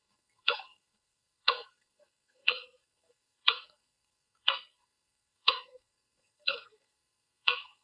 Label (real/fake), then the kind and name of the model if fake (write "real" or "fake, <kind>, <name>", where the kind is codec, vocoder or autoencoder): fake, codec, SNAC